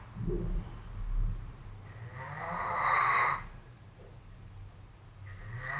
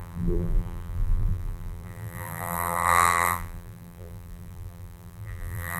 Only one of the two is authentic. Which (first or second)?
first